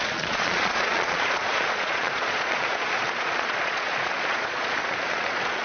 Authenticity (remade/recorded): remade